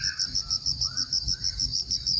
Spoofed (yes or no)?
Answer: no